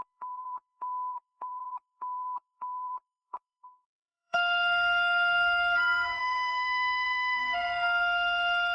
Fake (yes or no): yes